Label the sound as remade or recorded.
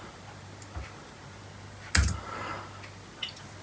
recorded